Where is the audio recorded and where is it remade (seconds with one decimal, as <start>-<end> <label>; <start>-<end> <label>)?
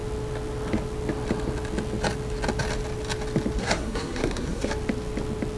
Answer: 0.0-3.6 recorded; 3.6-4.7 remade; 4.7-5.6 recorded